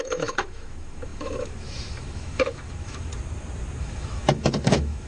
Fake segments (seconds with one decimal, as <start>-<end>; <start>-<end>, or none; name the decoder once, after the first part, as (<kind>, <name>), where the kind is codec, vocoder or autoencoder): 0.0-3.1 (autoencoder, DAC-VAE); 3.8-5.1